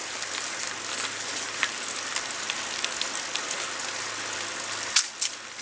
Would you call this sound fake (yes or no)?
no